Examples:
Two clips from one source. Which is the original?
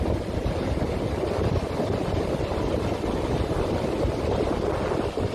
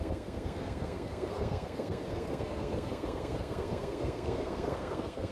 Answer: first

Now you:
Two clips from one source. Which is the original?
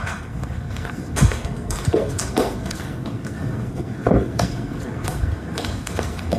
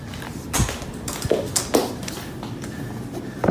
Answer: second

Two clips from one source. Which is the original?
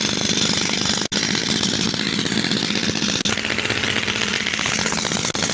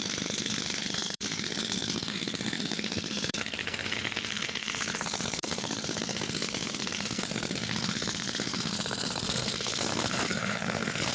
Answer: first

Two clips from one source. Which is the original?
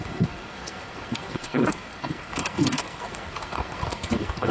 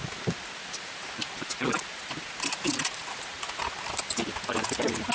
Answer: second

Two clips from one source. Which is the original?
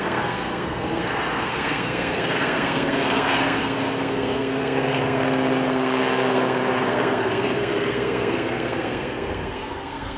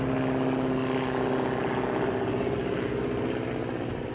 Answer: second